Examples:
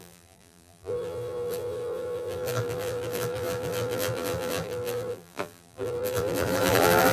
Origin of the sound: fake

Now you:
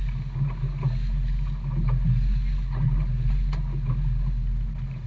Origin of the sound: real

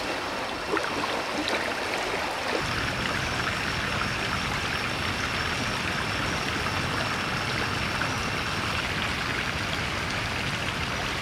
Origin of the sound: real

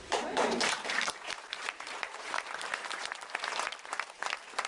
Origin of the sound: fake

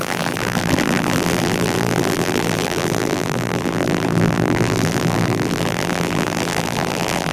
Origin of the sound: fake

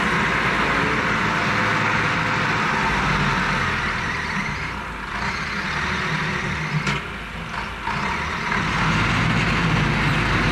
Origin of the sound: real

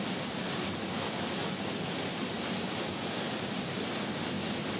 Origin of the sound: real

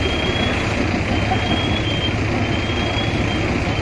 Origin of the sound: real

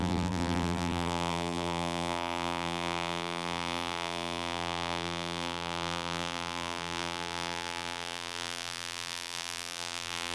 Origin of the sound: fake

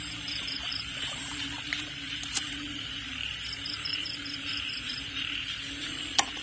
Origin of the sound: fake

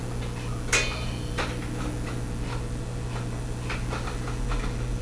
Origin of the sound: real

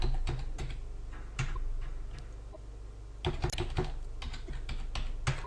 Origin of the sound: real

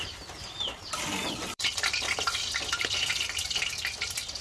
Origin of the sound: fake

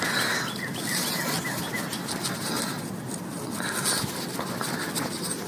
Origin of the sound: real